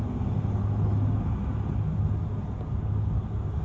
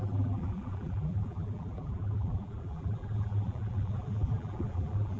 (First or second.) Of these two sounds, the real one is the first